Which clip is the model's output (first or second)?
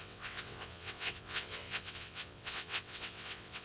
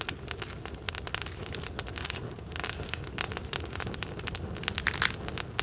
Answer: first